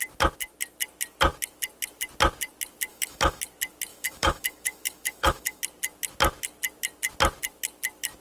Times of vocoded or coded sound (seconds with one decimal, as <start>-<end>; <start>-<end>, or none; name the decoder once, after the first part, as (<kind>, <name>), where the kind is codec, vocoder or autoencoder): 2.9-3.4 (autoencoder, DAC-VAE); 3.9-5.6